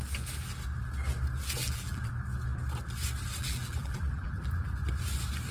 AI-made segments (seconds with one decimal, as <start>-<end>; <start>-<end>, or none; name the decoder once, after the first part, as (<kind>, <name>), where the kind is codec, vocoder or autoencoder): 1.6-2.1 (vocoder, BigVGAN v2); 3.4-4.7